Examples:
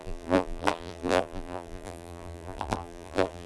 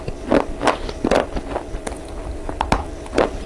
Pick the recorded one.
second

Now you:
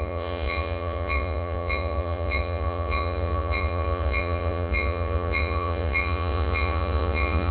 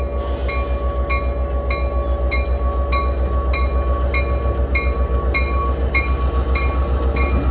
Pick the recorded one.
second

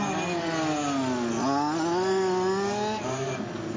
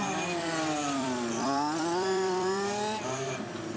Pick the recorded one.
first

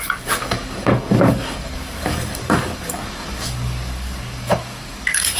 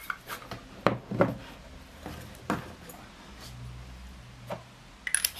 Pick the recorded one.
second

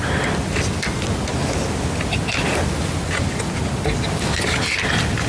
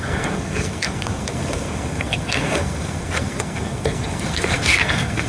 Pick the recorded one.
first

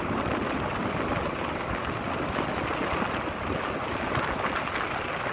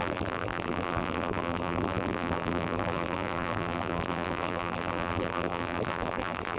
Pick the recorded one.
first